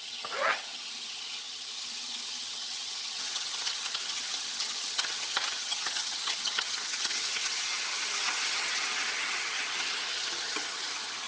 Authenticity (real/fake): fake